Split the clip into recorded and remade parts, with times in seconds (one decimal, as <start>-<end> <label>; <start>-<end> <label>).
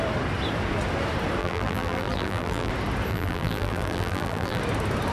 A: 0.0-1.4 recorded; 1.4-2.7 remade; 2.7-3.1 recorded; 3.1-4.6 remade; 4.6-5.1 recorded